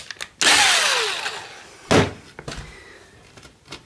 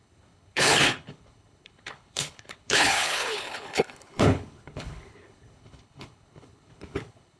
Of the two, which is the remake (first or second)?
second